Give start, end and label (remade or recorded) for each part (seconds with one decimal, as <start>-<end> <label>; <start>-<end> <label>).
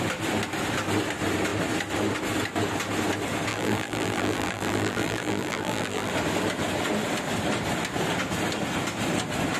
0.0-3.5 recorded; 3.5-6.1 remade; 6.1-9.6 recorded